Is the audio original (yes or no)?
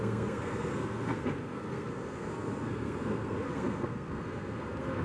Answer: no